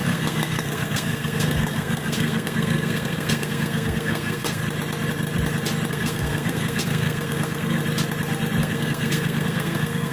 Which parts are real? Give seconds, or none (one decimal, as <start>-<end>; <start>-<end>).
4.6-5.9; 7.8-8.6